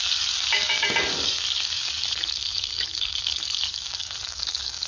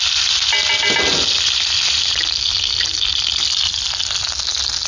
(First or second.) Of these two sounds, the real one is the second